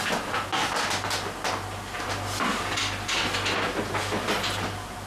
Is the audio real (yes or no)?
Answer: yes